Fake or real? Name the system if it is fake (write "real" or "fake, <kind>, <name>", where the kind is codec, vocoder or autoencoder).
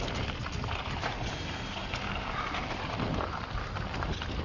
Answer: real